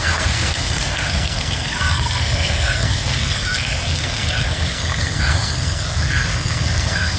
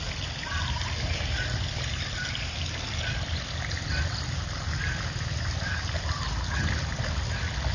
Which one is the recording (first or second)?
second